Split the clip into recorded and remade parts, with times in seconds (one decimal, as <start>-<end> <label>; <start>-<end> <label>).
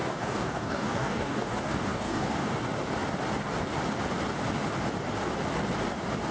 0.0-2.6 remade; 2.6-6.3 recorded